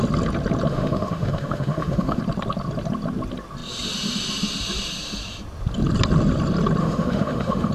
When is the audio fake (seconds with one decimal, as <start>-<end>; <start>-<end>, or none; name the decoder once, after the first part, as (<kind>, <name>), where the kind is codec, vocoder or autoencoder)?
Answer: 0.7-2.2 (autoencoder, DAC-VAE); 6.8-7.7